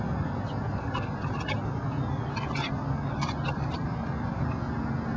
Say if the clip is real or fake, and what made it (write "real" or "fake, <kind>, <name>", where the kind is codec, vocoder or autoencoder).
real